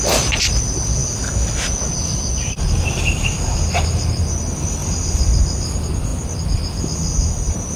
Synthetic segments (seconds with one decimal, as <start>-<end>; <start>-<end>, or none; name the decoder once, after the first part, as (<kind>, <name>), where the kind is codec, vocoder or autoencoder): 4.8-5.4 (vocoder, BigVGAN v2)